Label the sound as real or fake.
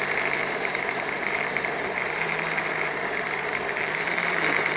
fake